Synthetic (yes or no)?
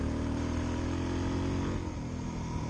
no